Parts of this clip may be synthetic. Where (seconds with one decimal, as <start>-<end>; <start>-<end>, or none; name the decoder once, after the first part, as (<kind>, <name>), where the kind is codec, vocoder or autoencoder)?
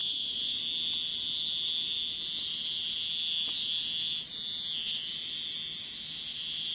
0.0-0.6 (vocoder, Vocos)